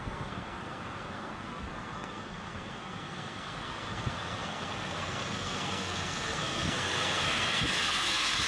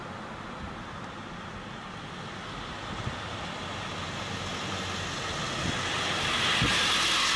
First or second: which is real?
second